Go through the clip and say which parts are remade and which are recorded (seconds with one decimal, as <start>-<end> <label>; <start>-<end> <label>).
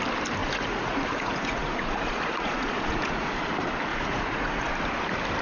0.0-0.4 recorded; 0.4-3.5 remade; 3.5-3.9 recorded; 3.9-4.7 remade; 4.7-5.4 recorded